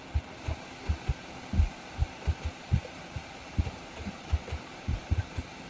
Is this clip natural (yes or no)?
yes